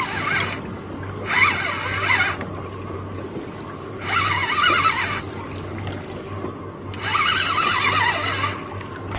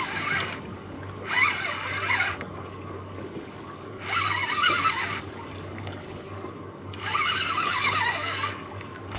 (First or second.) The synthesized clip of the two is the second